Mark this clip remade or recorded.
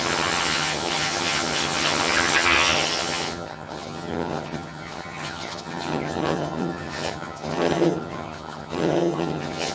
remade